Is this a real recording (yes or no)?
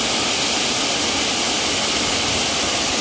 yes